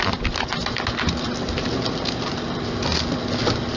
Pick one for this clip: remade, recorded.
recorded